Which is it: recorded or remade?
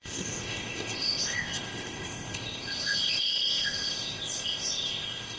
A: remade